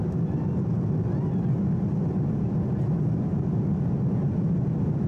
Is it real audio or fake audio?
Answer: real